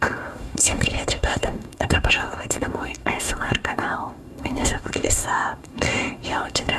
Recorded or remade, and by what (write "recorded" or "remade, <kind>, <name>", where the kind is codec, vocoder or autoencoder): remade, codec, SNAC